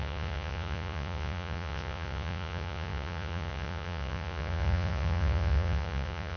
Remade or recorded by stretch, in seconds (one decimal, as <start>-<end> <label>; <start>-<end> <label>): 0.0-6.4 remade